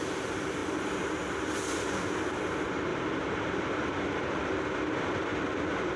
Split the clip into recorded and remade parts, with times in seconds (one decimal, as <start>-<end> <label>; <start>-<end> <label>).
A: 0.0-0.6 remade; 0.6-2.3 recorded; 2.3-6.0 remade